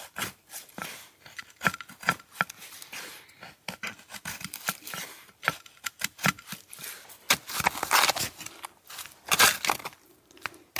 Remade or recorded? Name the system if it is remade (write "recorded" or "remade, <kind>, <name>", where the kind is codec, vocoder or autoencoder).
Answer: recorded